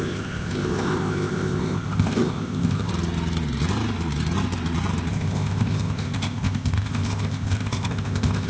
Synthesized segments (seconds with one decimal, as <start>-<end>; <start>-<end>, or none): 0.0-2.9; 5.1-8.5